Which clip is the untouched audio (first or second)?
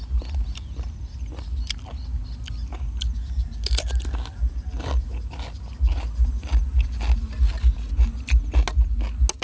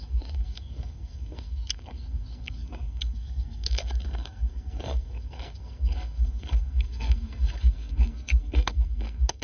first